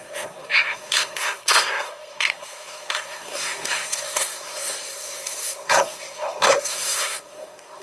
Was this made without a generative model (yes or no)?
no